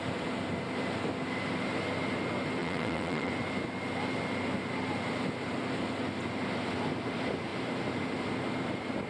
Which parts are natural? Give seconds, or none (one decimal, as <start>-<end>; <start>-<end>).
0.0-2.6; 3.3-9.1